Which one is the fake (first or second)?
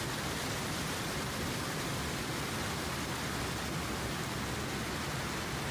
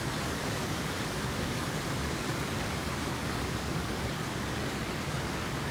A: second